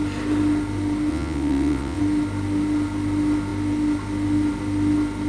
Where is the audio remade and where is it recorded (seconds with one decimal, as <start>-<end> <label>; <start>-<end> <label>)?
0.0-1.1 recorded; 1.1-2.0 remade; 2.0-5.3 recorded